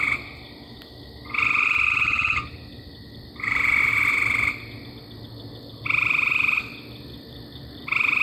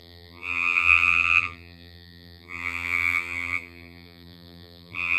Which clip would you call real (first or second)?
first